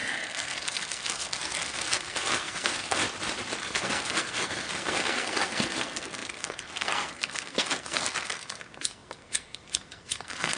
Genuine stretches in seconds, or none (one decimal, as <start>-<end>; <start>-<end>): 3.0-3.6